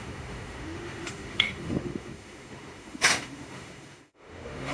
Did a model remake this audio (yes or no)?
yes